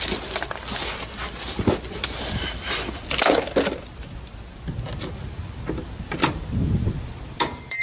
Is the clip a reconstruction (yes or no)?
no